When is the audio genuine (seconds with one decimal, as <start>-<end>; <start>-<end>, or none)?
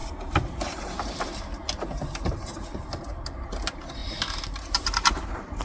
1.2-4.0